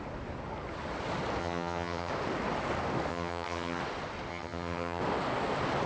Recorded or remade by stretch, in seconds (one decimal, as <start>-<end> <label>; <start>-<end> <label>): 0.0-1.4 recorded; 1.4-2.1 remade; 2.1-3.1 recorded; 3.1-3.8 remade; 3.8-4.3 recorded; 4.3-5.0 remade; 5.0-5.9 recorded